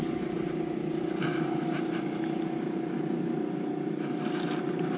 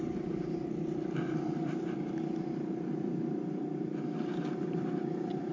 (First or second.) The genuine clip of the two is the first